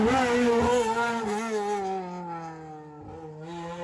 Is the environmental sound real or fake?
real